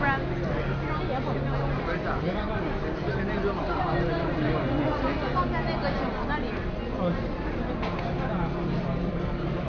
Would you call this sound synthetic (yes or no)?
no